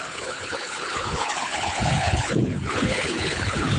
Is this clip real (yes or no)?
no